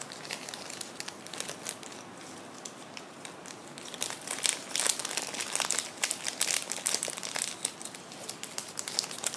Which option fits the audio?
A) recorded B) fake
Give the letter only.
A